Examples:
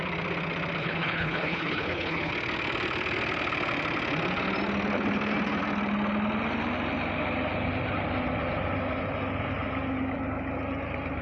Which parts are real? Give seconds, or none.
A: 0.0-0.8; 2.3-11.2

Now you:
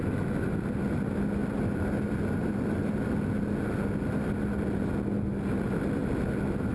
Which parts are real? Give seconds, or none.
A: 0.0-6.7

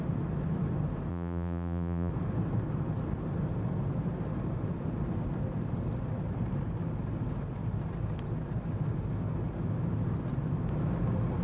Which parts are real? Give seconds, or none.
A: 0.0-1.1; 2.1-11.4

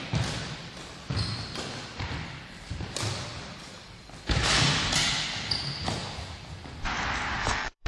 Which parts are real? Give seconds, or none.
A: 0.0-7.4

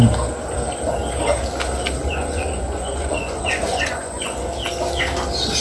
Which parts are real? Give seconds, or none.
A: 0.0-2.0; 4.5-5.6